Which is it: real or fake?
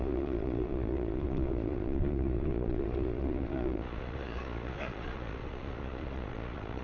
fake